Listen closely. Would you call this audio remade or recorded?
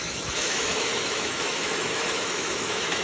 remade